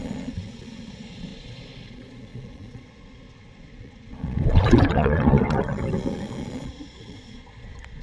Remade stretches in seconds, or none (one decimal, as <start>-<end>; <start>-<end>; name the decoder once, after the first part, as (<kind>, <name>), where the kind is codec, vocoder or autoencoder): 0.0-8.0 (vocoder, Vocos)